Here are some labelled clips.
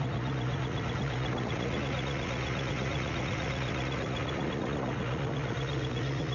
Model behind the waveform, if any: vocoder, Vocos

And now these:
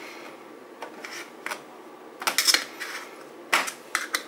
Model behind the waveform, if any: none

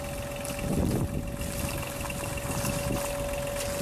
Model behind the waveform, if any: none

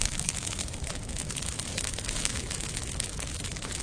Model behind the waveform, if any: autoencoder, DAC-VAE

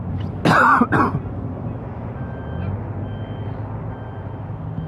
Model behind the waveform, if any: none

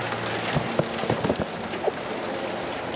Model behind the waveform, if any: none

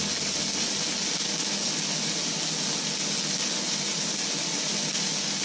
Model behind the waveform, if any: none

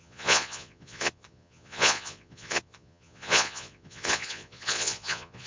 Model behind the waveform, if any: vocoder, Vocos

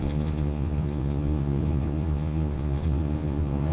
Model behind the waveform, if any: vocoder, Vocos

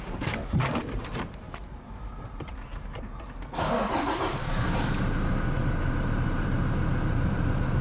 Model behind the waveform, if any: vocoder, BigVGAN v2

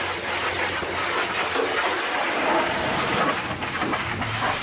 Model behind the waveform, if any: none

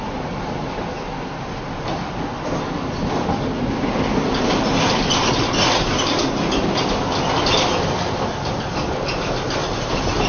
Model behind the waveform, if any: none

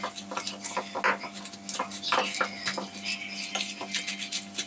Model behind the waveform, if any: none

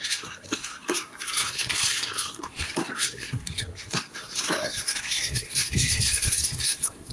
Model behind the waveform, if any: codec, SNAC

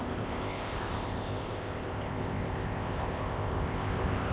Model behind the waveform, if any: codec, ZipCodec